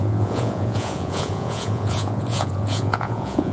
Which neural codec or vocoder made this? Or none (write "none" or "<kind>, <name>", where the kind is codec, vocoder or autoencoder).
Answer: vocoder, Vocos